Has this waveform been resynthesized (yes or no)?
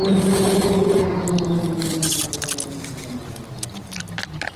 no